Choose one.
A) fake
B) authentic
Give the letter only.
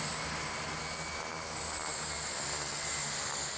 B